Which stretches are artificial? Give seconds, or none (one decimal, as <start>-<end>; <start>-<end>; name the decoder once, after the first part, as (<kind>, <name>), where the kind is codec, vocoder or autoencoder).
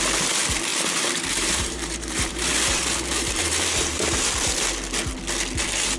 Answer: 0.7-4.3 (vocoder, BigVGAN v2)